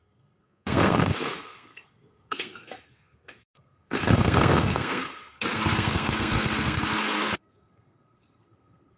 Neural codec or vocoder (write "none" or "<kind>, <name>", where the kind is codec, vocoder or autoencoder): codec, SNAC